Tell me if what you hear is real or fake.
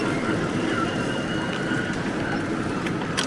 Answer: real